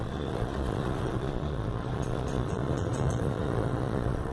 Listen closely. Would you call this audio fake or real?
fake